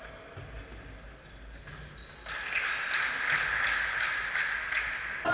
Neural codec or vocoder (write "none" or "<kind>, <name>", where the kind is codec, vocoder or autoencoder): none